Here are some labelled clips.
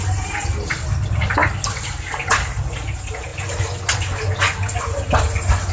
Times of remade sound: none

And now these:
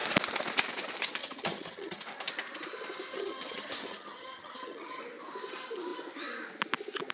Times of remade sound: 1.2-2.0; 3.1-5.0

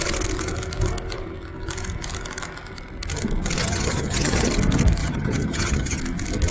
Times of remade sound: 3.6-4.5; 5.0-6.0

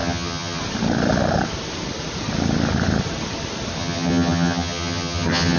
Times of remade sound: 0.0-0.6; 3.8-5.6

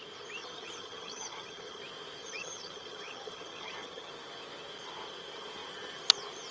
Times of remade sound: 0.4-1.8; 2.2-4.1

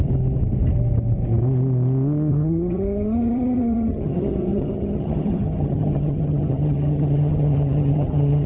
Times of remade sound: 2.3-8.5